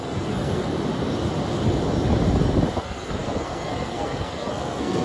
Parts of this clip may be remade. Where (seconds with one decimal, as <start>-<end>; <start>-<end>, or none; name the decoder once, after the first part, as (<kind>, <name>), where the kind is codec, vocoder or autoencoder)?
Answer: 0.0-0.7 (codec, SNAC); 2.8-5.0